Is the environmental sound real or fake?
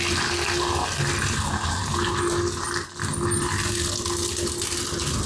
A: real